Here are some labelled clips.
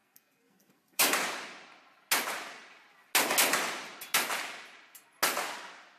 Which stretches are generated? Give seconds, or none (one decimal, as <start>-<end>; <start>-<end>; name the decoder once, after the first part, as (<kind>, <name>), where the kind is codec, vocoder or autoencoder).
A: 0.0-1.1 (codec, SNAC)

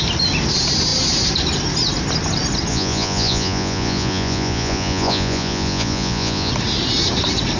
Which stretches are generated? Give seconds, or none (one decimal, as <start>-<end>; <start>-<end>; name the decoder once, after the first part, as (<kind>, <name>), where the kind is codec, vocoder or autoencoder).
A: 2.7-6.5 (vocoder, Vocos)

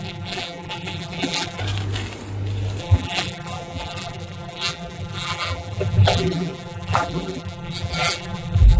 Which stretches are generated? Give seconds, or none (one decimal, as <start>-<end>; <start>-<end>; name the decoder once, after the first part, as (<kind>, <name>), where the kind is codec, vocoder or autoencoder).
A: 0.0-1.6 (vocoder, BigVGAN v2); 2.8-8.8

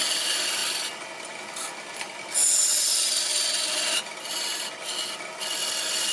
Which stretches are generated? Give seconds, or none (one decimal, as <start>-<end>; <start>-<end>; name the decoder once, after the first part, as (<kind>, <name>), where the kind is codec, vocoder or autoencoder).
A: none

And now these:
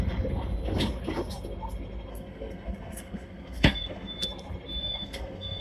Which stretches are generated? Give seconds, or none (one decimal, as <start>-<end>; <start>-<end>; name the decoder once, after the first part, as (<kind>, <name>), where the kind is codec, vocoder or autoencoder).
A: 2.1-4.2 (codec, SNAC); 4.8-5.6